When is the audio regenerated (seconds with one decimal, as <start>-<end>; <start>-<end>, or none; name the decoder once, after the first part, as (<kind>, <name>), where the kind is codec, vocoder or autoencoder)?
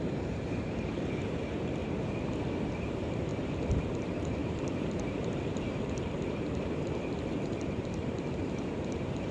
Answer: 0.0-1.8 (vocoder, BigVGAN v2); 2.7-3.3; 4.0-9.3